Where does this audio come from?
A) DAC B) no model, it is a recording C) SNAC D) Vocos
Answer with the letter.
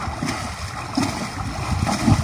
B